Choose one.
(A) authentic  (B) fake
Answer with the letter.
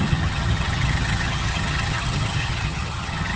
B